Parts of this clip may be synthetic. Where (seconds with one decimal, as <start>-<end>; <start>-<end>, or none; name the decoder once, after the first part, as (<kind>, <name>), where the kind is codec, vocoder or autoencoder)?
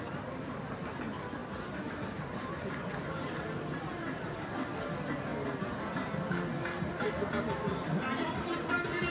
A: none